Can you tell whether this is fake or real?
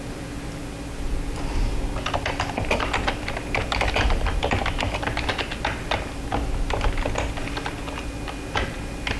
real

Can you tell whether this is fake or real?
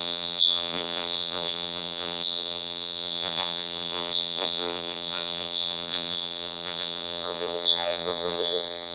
fake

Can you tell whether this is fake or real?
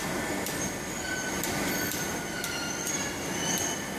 real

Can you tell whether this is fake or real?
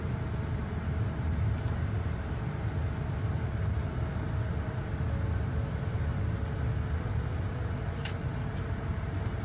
real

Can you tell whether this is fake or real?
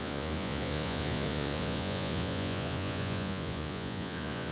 fake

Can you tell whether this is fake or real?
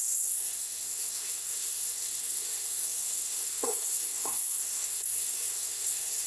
fake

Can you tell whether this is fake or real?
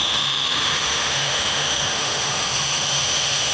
fake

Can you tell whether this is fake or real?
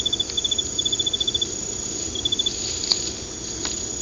real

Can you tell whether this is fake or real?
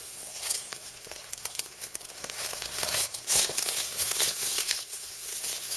fake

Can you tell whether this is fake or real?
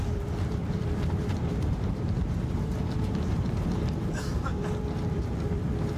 fake